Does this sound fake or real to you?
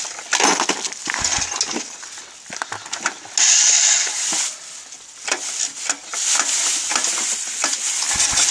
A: real